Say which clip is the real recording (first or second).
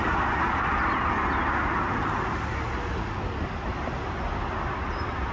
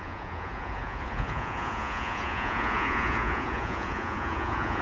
first